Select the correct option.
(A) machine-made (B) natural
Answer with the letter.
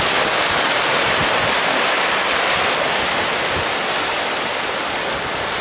B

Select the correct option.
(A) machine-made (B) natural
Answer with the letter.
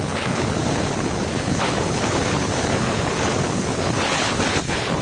A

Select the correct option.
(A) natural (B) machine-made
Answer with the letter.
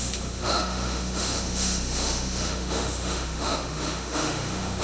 B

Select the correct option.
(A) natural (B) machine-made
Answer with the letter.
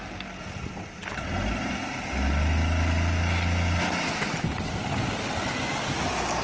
A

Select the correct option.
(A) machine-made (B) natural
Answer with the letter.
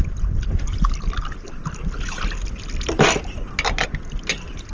B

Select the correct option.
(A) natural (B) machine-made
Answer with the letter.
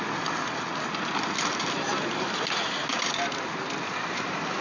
A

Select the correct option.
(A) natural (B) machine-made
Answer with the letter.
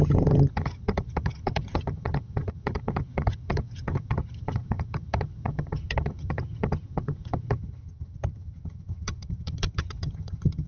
B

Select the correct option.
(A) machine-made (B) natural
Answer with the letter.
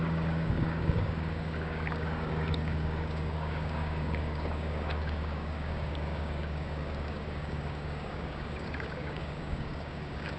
A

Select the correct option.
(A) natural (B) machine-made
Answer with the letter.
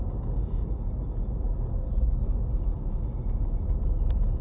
A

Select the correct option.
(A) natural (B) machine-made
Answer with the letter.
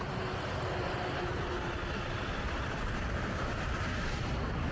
A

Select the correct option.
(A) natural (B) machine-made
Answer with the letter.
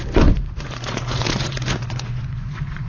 B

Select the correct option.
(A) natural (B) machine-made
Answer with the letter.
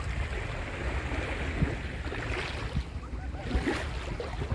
A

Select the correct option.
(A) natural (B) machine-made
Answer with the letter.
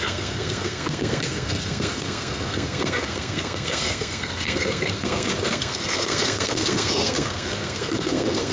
B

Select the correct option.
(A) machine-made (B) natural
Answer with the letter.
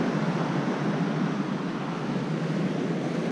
B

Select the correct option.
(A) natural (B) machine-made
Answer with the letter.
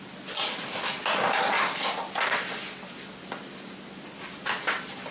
A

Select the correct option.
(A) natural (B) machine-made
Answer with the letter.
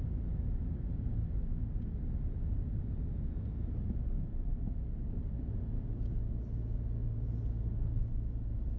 A